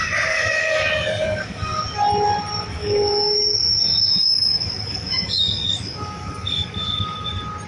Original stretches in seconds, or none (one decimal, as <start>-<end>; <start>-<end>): 1.8-2.7; 7.3-7.7